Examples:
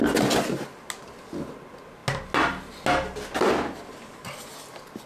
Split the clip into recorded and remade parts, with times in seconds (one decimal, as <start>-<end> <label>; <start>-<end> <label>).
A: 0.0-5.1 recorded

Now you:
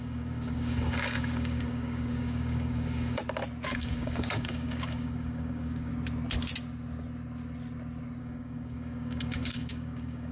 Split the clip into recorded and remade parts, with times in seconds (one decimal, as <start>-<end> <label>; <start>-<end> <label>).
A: 0.0-3.2 remade; 3.2-3.7 recorded; 3.7-5.9 remade; 5.9-8.2 recorded; 8.2-10.3 remade

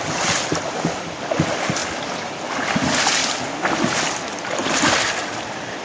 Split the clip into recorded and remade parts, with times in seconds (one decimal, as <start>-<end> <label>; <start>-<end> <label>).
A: 0.0-5.8 recorded

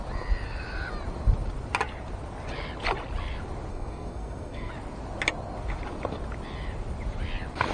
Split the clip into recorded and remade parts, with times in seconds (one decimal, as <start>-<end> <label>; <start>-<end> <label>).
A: 0.0-3.7 recorded; 3.7-4.7 remade; 4.7-7.7 recorded

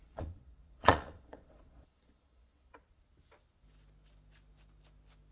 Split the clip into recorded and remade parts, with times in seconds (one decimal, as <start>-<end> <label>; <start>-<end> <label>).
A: 0.0-2.8 remade; 2.8-5.3 recorded